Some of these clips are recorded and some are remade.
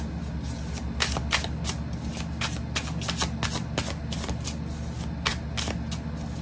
recorded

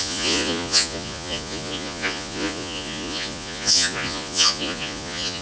remade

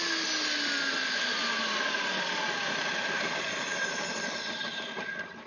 recorded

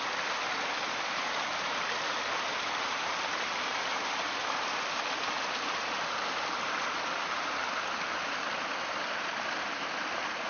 recorded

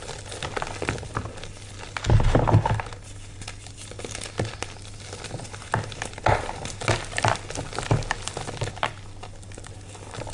recorded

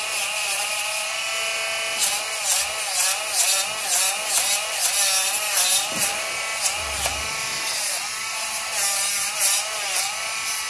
recorded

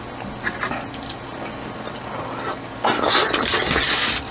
recorded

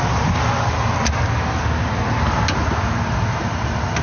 recorded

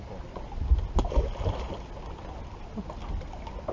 recorded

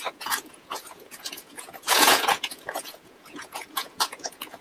remade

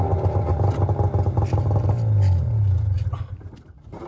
recorded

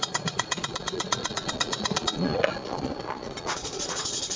remade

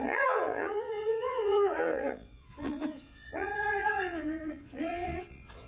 remade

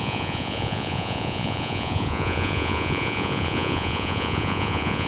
remade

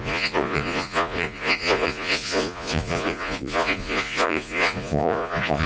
remade